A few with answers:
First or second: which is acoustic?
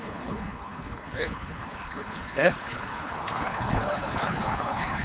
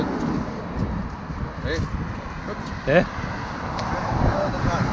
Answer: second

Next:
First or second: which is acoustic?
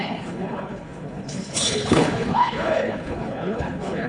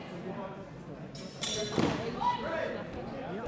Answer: second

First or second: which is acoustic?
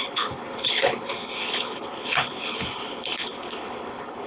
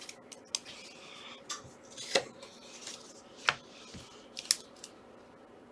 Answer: second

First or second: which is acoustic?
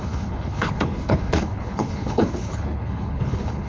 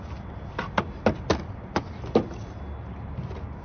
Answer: second